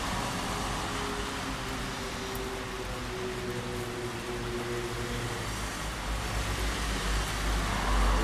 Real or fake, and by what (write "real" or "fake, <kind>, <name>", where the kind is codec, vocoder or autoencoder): real